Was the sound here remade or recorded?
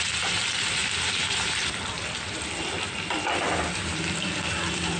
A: remade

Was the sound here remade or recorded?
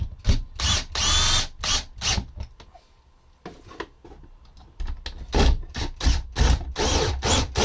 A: recorded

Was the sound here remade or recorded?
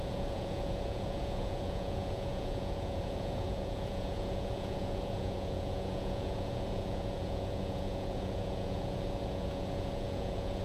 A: remade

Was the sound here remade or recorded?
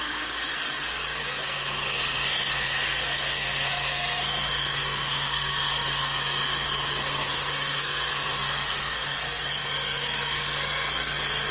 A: remade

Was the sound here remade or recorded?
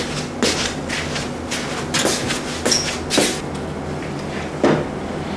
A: recorded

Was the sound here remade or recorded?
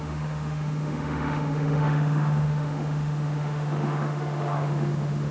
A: remade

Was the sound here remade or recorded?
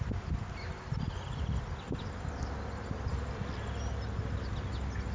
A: recorded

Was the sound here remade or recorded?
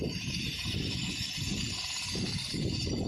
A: recorded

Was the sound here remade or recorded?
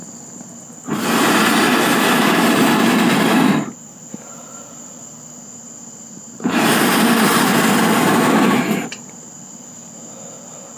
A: recorded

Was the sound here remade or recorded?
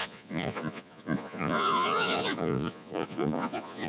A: remade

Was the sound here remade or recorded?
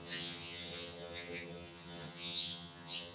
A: remade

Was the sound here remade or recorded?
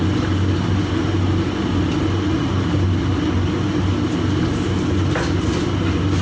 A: recorded